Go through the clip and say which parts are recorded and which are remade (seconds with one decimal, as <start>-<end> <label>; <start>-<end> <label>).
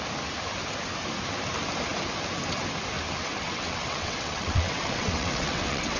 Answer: 0.0-3.2 recorded; 3.2-6.0 remade